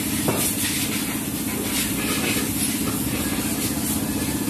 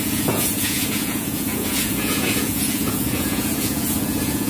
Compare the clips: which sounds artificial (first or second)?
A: second